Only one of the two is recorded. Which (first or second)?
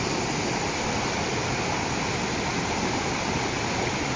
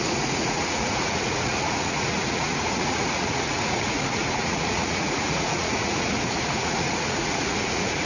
first